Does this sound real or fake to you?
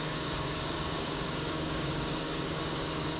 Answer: fake